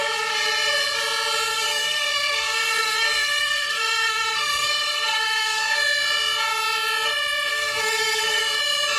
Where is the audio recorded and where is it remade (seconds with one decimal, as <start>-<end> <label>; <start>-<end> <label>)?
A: 0.0-1.5 recorded; 1.5-5.6 remade; 5.6-7.5 recorded; 7.5-8.4 remade; 8.4-9.0 recorded

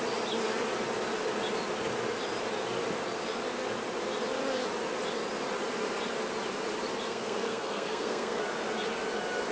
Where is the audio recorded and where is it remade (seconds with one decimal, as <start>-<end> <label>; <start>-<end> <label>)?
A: 0.0-7.1 recorded; 7.1-8.4 remade; 8.4-9.5 recorded

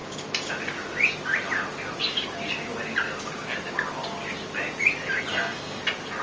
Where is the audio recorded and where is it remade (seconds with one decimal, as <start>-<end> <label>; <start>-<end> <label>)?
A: 0.0-5.3 recorded; 5.3-5.8 remade; 5.8-6.2 recorded

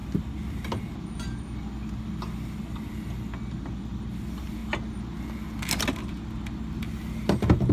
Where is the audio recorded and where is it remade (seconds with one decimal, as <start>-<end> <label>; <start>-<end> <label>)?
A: 0.0-7.7 recorded

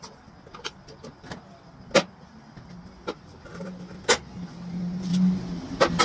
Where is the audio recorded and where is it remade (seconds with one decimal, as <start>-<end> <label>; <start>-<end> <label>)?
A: 0.0-6.0 recorded

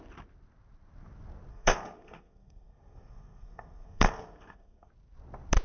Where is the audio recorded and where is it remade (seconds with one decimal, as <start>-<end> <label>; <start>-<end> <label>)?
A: 0.0-1.5 recorded; 1.5-4.9 remade; 4.9-5.6 recorded